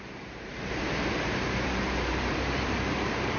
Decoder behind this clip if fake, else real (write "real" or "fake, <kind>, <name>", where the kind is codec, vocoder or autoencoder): fake, vocoder, BigVGAN v2